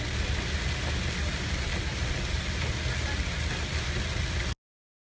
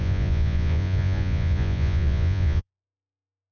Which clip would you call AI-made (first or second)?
second